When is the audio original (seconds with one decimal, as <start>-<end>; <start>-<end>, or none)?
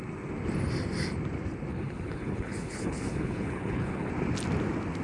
0.0-1.7; 4.1-5.0